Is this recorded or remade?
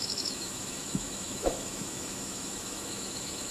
remade